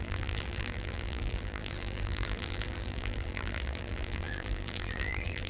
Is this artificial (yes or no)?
yes